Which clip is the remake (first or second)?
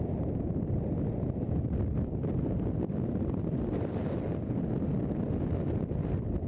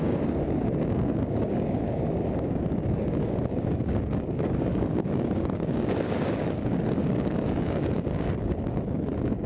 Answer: second